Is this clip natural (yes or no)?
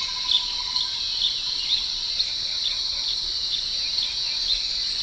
yes